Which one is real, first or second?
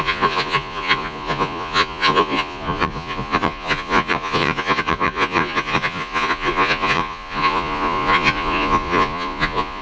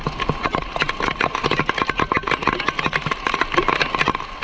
second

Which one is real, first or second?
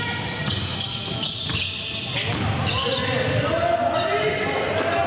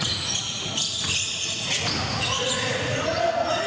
first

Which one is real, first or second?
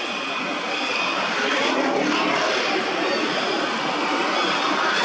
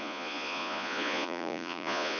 first